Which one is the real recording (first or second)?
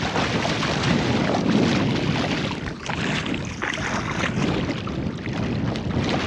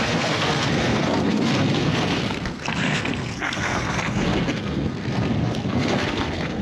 first